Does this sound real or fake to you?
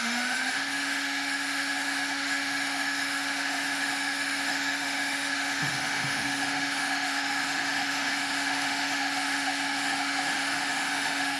fake